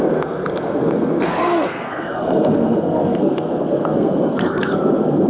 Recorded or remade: remade